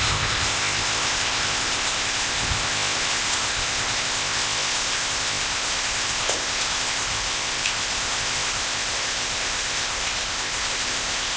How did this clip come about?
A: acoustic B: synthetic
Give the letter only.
B